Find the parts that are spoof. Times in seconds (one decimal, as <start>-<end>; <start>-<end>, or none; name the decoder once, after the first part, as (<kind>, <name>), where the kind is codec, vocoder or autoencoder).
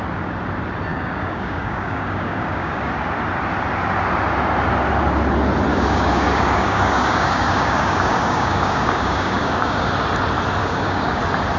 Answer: 0.9-2.9 (codec, DAC); 5.7-9.9; 10.6-11.2